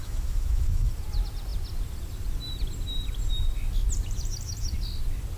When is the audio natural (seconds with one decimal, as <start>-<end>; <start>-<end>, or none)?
0.9-5.4